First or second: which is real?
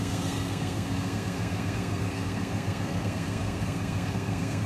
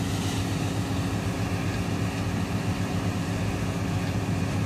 second